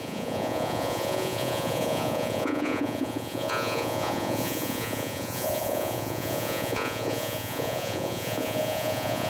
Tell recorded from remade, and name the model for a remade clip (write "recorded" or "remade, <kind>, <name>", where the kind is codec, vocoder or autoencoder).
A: remade, vocoder, Vocos